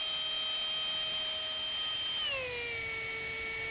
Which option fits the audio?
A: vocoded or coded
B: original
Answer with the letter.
B